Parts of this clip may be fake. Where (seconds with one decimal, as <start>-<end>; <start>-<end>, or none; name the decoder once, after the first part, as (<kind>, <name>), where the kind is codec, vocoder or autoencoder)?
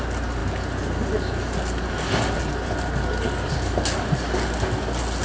none